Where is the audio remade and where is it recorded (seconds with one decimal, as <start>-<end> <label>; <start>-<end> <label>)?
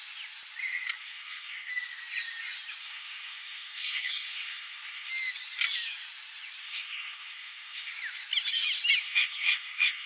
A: 0.0-1.0 recorded; 1.0-1.7 remade; 1.7-2.8 recorded; 2.8-5.1 remade; 5.1-6.6 recorded; 6.6-7.9 remade; 7.9-9.0 recorded; 9.0-10.1 remade